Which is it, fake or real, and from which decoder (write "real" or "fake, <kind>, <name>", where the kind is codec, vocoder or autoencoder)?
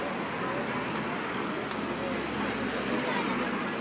real